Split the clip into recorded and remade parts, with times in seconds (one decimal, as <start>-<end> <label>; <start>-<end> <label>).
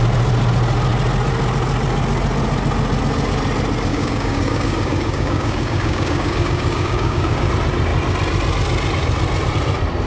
0.0-3.9 recorded; 3.9-7.5 remade; 7.5-10.1 recorded